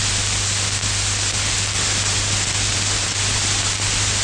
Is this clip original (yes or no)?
no